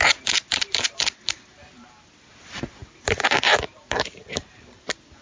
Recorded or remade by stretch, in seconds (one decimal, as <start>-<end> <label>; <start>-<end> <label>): 0.0-3.8 recorded; 3.8-4.5 remade; 4.5-5.2 recorded